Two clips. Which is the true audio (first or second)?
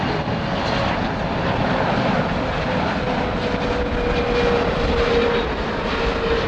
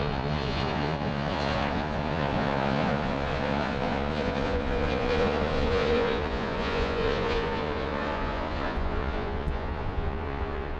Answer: first